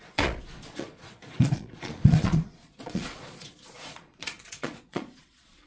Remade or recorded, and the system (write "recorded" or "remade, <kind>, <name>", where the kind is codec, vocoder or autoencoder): remade, vocoder, Vocos